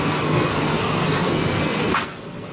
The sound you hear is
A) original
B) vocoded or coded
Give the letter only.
B